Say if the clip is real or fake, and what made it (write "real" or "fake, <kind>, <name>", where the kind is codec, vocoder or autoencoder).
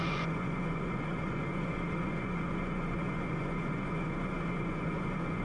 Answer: fake, vocoder, Vocos